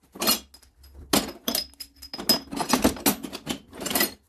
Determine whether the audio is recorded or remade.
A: recorded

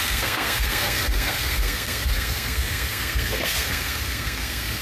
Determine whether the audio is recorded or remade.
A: remade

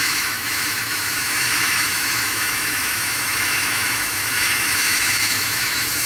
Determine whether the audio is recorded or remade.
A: remade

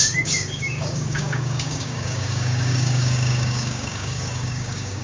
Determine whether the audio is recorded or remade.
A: remade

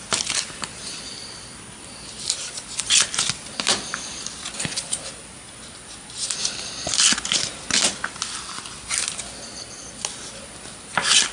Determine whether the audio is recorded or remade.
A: recorded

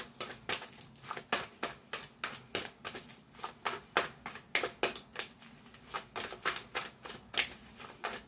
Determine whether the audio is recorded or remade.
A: recorded